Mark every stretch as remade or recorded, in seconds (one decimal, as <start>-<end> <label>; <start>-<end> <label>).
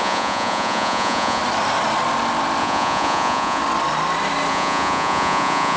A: 0.0-1.4 remade; 1.4-2.6 recorded; 2.6-3.6 remade; 3.6-4.5 recorded; 4.5-5.8 remade